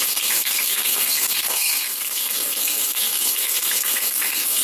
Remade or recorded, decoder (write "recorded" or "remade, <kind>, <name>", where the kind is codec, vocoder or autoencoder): remade, codec, SNAC